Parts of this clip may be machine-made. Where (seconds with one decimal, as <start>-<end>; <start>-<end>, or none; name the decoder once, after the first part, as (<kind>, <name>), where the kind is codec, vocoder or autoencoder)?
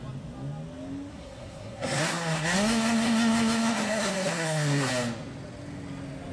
1.1-4.9 (codec, SNAC)